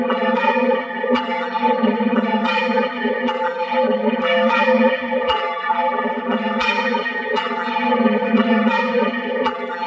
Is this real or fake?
fake